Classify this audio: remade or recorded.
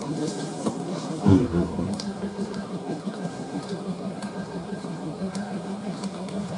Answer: remade